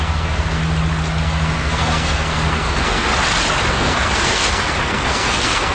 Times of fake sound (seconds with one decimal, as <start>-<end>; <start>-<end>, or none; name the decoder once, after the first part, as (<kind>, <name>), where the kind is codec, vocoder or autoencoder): 0.0-0.6 (codec, SNAC); 1.2-3.1; 3.7-5.7